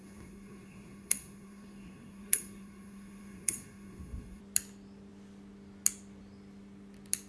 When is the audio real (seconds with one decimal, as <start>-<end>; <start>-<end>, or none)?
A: 4.4-7.3